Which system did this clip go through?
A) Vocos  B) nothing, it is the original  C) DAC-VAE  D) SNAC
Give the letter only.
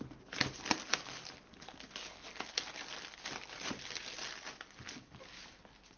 B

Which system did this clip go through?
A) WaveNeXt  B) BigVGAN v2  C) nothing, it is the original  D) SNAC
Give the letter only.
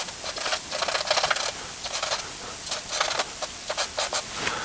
C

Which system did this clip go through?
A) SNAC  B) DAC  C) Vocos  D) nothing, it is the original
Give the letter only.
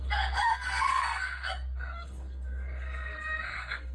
A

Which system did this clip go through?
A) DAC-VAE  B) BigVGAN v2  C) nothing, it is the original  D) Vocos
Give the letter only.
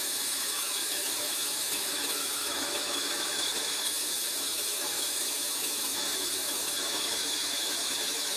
A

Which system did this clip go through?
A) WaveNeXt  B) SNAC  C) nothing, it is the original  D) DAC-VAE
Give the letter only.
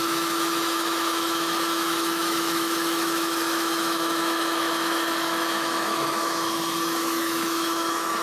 D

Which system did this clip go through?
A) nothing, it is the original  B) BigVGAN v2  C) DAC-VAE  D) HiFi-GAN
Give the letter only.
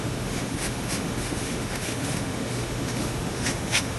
C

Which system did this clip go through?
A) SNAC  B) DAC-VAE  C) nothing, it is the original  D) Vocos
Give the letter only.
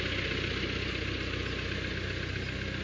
C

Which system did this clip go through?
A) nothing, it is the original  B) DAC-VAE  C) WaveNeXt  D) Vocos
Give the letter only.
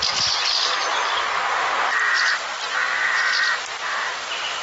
A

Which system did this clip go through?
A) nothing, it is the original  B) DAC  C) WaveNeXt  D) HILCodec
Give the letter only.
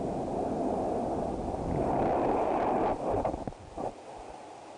A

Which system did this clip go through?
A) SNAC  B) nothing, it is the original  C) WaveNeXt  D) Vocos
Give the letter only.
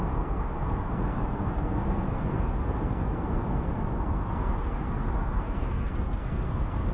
A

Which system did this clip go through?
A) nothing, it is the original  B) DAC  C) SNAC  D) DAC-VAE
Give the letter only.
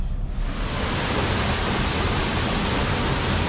A